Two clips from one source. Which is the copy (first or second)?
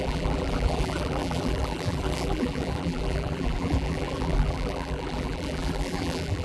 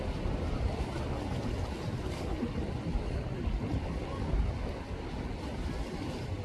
first